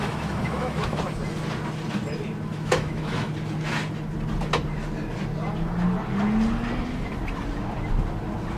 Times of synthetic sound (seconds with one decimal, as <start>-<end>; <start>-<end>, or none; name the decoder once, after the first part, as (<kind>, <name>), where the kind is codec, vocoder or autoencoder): 0.0-1.0 (autoencoder, DAC-VAE); 2.5-3.3